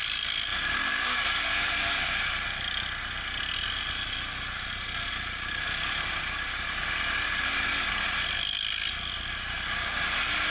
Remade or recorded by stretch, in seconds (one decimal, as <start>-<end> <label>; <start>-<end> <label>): 0.0-10.5 recorded